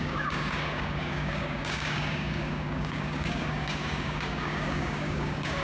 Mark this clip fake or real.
fake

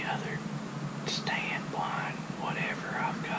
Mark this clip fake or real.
real